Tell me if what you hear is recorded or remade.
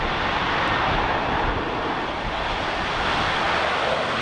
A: recorded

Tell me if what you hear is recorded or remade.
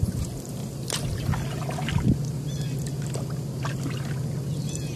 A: recorded